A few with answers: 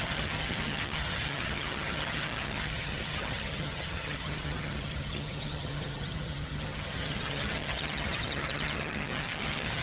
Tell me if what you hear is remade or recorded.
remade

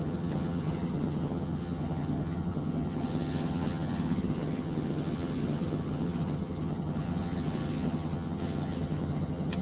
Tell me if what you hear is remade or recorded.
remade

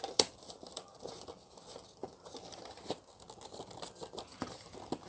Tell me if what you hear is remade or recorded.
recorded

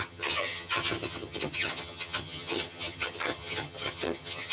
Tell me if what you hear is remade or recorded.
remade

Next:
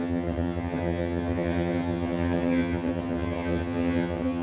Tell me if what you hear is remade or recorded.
remade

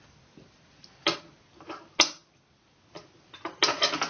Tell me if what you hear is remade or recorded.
recorded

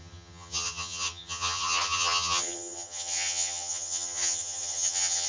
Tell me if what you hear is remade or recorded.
remade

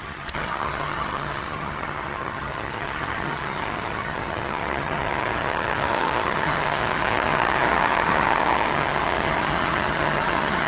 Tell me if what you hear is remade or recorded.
remade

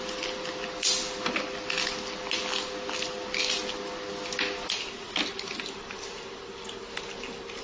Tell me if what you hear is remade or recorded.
recorded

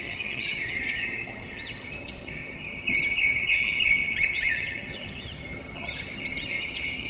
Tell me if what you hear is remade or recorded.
remade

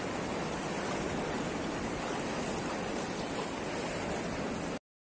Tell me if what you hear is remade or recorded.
recorded